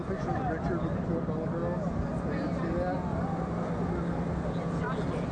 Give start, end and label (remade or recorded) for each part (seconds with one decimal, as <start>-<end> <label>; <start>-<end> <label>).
0.0-5.3 recorded